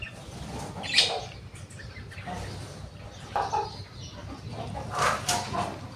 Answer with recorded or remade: recorded